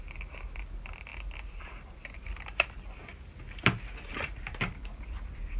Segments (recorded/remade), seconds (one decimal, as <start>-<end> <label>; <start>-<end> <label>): 0.0-3.1 remade; 3.1-4.1 recorded; 4.1-5.6 remade